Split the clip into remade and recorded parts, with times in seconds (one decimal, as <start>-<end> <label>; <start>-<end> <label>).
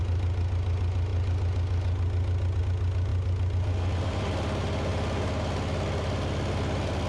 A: 0.0-7.1 recorded